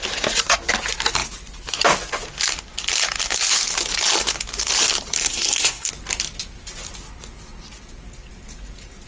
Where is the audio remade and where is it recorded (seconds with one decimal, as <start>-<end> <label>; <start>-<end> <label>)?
0.0-5.2 recorded; 5.2-5.9 remade; 5.9-9.1 recorded